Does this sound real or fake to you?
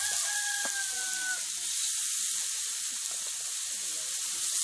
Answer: real